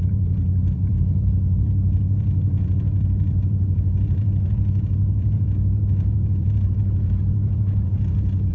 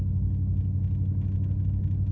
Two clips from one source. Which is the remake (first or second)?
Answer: first